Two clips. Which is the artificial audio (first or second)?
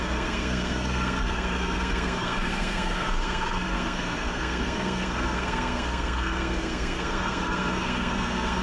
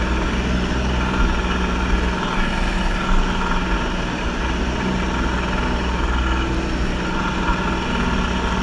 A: first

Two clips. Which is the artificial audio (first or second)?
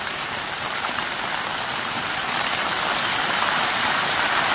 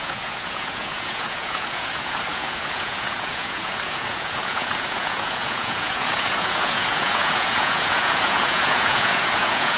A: second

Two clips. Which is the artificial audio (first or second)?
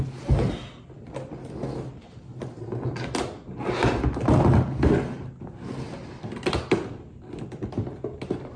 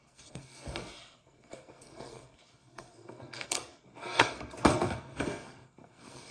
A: second